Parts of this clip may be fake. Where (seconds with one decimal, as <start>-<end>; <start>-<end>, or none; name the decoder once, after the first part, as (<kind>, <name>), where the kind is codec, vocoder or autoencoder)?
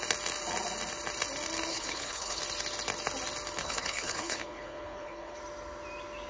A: 1.7-2.4 (codec, HILCodec); 3.6-5.4